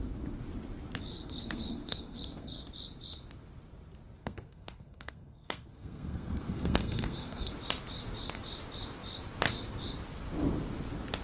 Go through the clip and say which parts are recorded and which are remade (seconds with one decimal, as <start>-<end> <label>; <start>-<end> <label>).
0.0-1.1 recorded; 1.1-2.7 remade; 2.7-4.2 recorded; 4.2-7.5 remade; 7.5-11.2 recorded